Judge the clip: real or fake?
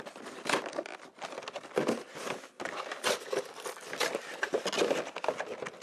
real